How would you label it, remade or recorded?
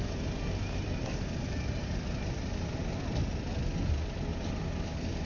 recorded